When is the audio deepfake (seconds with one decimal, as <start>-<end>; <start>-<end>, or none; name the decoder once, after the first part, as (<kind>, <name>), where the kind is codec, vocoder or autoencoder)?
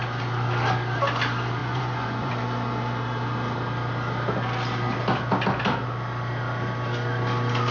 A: 1.6-2.3 (vocoder, Vocos)